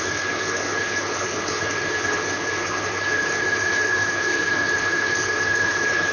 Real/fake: fake